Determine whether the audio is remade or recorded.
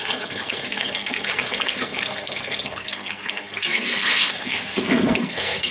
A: remade